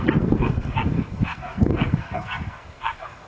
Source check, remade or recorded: remade